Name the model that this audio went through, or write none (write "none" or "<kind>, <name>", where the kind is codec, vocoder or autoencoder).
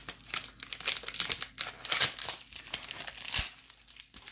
none